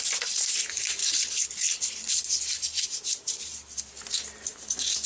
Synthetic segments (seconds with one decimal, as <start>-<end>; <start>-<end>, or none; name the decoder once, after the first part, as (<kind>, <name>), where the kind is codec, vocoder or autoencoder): 1.0-2.2 (codec, HILCodec)